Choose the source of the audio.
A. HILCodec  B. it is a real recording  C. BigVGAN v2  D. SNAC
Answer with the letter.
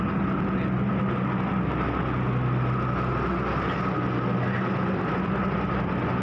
B